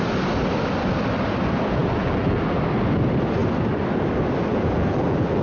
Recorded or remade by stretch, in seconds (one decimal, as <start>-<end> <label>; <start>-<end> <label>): 0.0-1.8 recorded; 1.8-2.6 remade; 2.6-4.5 recorded; 4.5-5.4 remade